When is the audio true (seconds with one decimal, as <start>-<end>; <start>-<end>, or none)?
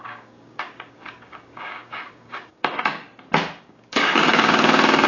3.0-3.6